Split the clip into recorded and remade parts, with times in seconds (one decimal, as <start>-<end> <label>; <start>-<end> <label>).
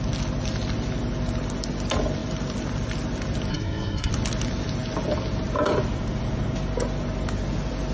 0.0-3.5 recorded; 3.5-4.1 remade; 4.1-7.9 recorded